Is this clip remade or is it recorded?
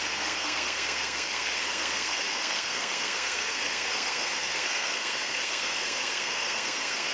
remade